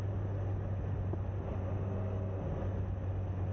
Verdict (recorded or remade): recorded